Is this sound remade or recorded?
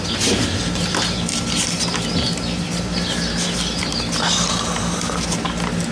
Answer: recorded